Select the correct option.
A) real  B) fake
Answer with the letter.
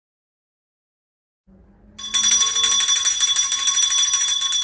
A